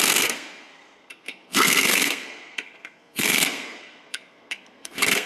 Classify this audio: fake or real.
fake